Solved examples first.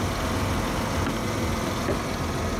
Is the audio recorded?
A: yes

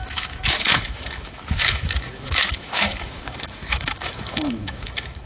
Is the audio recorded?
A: no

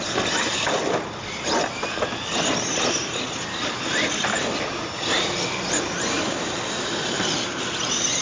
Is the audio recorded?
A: yes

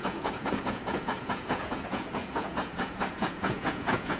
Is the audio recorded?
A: no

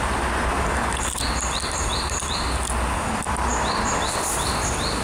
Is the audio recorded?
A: yes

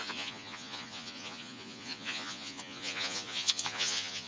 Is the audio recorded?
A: no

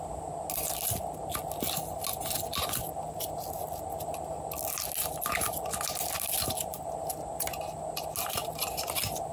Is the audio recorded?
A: yes